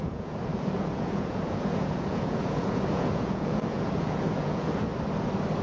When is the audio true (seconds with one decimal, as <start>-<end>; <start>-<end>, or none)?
4.9-5.6